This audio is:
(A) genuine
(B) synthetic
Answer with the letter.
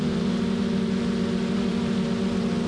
A